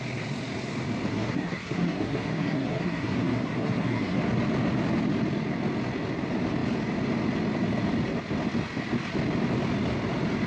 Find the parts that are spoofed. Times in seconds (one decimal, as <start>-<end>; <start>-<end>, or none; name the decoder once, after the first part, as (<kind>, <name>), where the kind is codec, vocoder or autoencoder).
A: 1.1-4.2 (codec, SNAC)